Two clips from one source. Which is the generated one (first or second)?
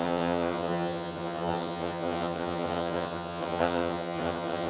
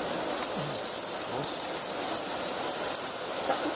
first